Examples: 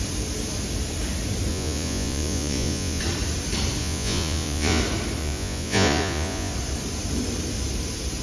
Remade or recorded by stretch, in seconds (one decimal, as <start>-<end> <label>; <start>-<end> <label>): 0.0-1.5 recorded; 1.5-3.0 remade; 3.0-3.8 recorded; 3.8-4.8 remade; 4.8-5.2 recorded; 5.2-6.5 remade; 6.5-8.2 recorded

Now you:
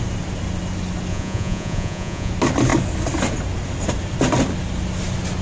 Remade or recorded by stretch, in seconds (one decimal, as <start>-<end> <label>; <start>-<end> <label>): 0.0-1.1 recorded; 1.1-2.3 remade; 2.3-5.4 recorded

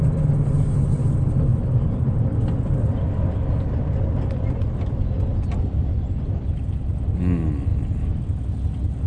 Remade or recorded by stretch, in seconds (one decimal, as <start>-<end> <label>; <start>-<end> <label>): 0.0-9.1 recorded